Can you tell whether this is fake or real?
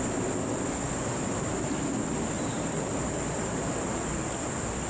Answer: real